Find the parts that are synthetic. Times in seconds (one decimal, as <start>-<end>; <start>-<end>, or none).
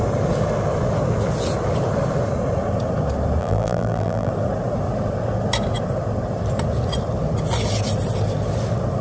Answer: 3.4-4.3